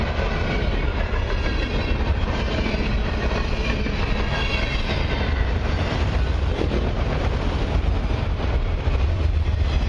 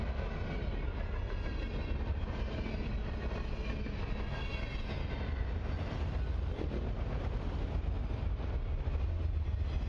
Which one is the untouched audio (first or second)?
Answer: second